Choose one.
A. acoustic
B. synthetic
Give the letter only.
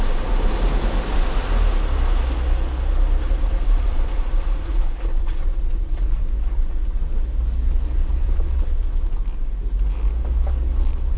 A